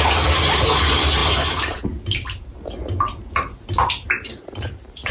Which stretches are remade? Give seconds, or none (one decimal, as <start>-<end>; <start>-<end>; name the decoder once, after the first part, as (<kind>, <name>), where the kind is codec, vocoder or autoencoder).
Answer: none